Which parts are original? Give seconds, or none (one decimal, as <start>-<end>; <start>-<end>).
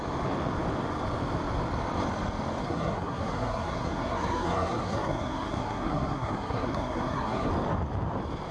0.0-2.6; 7.5-8.5